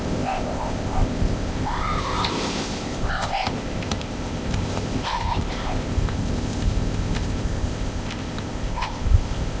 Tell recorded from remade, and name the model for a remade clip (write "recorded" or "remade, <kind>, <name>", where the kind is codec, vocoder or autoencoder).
remade, codec, ZipCodec